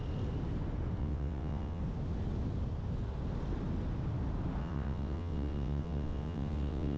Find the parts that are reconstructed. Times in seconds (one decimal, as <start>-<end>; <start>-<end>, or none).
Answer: 1.0-1.8; 4.6-7.0